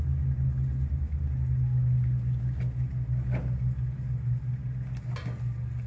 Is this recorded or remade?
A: recorded